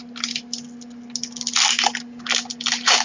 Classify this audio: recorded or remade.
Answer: recorded